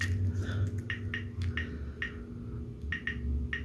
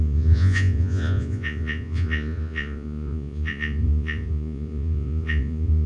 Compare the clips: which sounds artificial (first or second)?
second